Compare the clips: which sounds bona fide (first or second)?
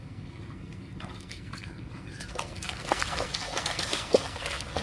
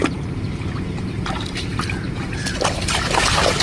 second